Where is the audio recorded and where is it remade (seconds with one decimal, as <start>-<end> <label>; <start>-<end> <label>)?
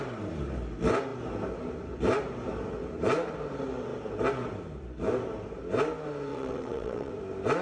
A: 0.0-6.3 recorded; 6.3-7.1 remade; 7.1-7.6 recorded